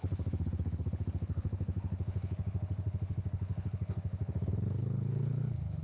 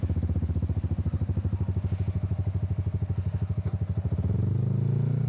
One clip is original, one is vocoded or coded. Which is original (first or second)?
second